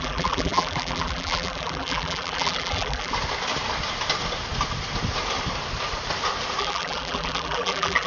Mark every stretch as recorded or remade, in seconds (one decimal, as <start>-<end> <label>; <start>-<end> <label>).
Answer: 0.0-3.1 remade; 3.1-6.6 recorded; 6.6-8.1 remade